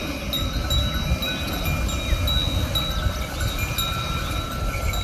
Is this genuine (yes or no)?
yes